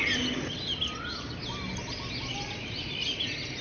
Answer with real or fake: real